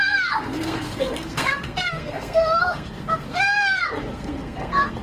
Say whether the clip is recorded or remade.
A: remade